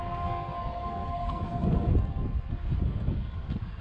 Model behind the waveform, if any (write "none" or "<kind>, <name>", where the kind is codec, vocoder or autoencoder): codec, SNAC